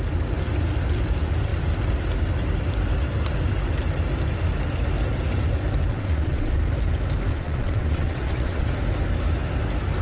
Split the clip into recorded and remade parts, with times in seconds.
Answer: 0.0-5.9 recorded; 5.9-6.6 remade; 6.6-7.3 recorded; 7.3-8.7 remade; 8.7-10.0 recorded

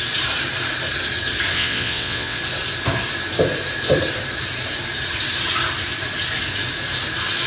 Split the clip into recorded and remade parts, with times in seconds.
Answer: 0.0-1.5 recorded; 1.5-2.4 remade; 2.4-7.5 recorded

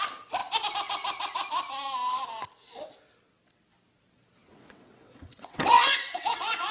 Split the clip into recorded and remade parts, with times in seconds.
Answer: 0.0-4.5 recorded; 4.5-6.7 remade